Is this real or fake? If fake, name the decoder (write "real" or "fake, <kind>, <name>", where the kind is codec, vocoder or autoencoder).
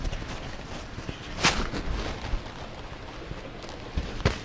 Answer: real